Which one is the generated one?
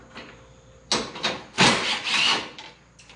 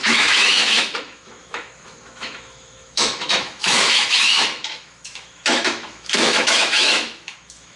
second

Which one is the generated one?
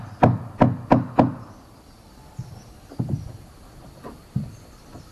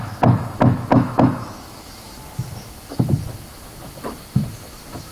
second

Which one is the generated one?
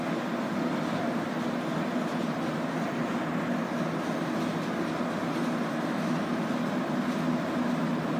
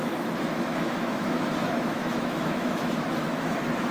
second